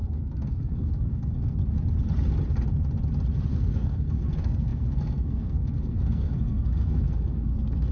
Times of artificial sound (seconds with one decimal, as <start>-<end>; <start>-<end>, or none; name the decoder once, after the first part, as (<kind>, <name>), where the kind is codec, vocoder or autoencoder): 0.0-1.6 (codec, SNAC); 3.5-7.9